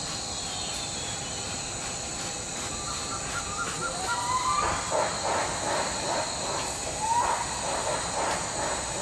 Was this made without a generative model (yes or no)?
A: yes